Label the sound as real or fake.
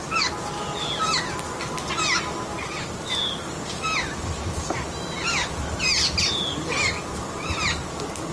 real